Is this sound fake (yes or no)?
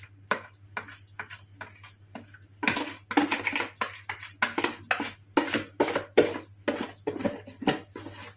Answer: no